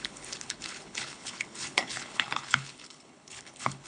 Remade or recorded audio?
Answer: remade